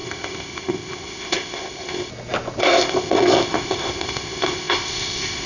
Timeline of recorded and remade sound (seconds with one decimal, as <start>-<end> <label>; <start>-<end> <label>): 0.0-2.1 remade; 2.1-2.6 recorded; 2.6-5.5 remade